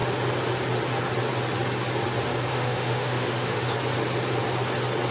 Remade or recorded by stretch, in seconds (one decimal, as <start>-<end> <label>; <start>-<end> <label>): 0.0-2.5 recorded; 2.5-3.7 remade; 3.7-5.1 recorded